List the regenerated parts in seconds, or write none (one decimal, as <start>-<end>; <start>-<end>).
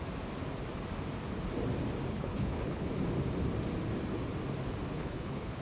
2.1-2.9; 4.9-5.6